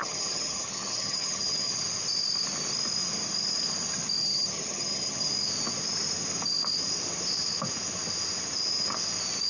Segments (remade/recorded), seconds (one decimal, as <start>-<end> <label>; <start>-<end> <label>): 0.0-1.8 remade; 1.8-4.2 recorded; 4.2-5.3 remade; 5.3-9.5 recorded